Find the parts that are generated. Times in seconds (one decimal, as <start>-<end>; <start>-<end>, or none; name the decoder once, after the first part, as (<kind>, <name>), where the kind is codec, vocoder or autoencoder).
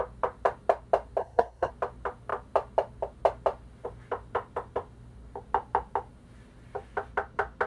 1.2-1.7 (codec, SNAC)